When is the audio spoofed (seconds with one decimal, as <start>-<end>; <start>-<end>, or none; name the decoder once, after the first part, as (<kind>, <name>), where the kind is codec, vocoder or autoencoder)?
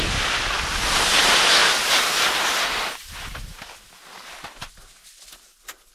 none